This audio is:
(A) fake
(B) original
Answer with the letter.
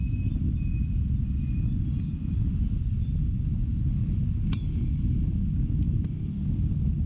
B